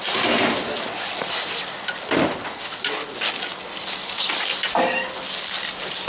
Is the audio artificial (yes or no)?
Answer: no